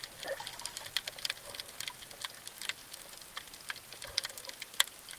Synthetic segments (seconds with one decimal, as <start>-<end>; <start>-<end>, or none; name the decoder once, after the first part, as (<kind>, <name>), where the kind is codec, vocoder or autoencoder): 0.5-1.7 (vocoder, BigVGAN v2); 2.8-4.2